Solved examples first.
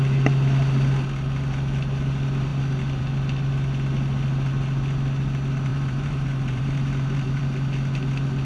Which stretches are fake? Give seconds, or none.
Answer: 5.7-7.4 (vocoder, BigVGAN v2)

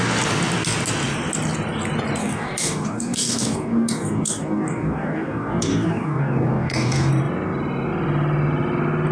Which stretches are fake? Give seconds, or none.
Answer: 2.2-7.1 (codec, DAC)

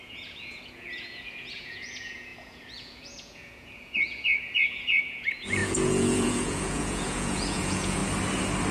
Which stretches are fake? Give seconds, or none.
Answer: 0.0-8.0 (vocoder, Vocos)

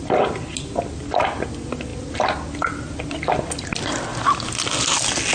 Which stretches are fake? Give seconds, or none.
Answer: none

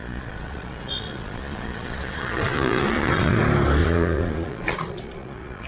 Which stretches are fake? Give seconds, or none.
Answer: 0.0-3.4 (vocoder, Vocos); 3.8-5.7

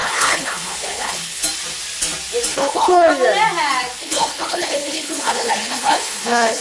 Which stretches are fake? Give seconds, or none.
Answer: 0.0-1.4 (codec, HILCodec); 2.5-3.1; 4.0-6.6

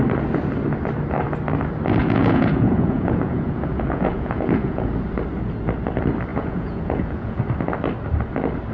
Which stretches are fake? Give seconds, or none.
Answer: 2.0-4.9 (vocoder, Vocos); 6.3-7.4

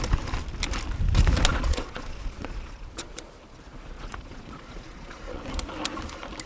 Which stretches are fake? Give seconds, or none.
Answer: 1.5-5.4 (vocoder, Vocos)